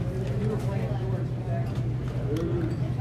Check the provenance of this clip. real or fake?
real